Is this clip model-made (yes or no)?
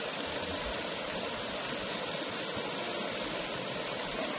yes